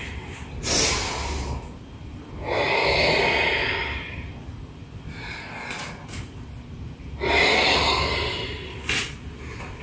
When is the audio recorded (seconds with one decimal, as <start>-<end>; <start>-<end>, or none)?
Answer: 0.0-9.8